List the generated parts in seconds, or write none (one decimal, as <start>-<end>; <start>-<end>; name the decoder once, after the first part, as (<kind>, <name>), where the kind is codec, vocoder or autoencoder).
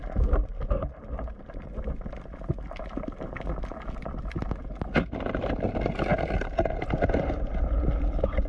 none